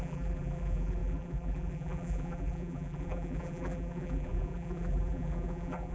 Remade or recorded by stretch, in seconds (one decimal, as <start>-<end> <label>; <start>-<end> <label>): 0.0-5.9 remade